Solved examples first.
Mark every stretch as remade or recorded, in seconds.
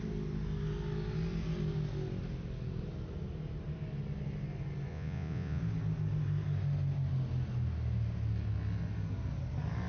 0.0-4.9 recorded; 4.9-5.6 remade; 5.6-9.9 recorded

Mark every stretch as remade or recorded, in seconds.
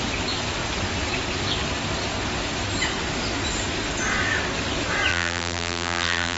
0.0-5.1 recorded; 5.1-6.4 remade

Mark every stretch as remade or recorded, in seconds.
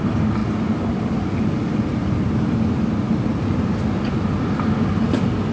0.0-5.5 recorded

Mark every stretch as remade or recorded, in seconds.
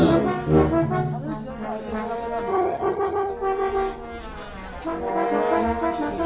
0.0-2.5 recorded; 2.5-3.3 remade; 3.3-6.3 recorded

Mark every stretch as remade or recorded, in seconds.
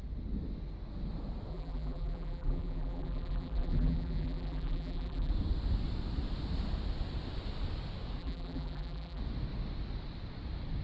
0.0-1.5 recorded; 1.5-5.3 remade; 5.3-8.2 recorded; 8.2-9.2 remade; 9.2-10.8 recorded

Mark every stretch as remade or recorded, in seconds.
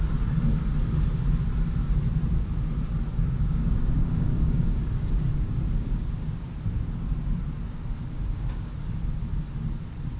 0.0-3.1 recorded; 3.1-6.4 remade; 6.4-8.0 recorded; 8.0-8.7 remade; 8.7-10.2 recorded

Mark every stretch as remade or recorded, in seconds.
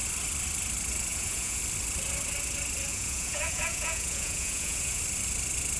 0.0-1.1 recorded; 1.1-1.6 remade; 1.6-2.9 recorded; 2.9-5.0 remade; 5.0-5.8 recorded